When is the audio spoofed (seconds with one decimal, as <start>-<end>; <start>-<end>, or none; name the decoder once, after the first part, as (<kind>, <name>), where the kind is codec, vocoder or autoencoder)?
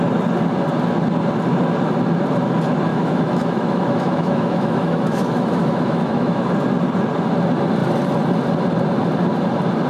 2.9-6.5 (autoencoder, DAC-VAE)